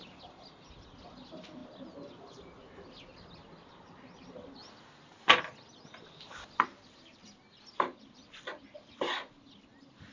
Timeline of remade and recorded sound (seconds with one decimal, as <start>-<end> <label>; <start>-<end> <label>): 0.0-10.1 recorded